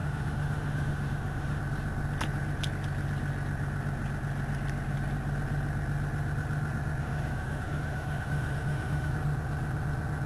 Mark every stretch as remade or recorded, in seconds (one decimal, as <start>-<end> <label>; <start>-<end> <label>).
0.0-1.6 remade; 1.6-7.0 recorded; 7.0-9.1 remade; 9.1-10.3 recorded